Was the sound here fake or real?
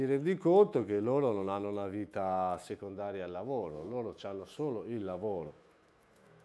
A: fake